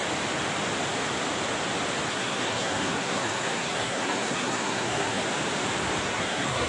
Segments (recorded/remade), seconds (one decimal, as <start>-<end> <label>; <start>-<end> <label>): 0.0-2.1 recorded; 2.1-5.2 remade; 5.2-6.0 recorded; 6.0-6.7 remade